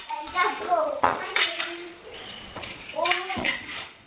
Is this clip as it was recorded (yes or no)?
no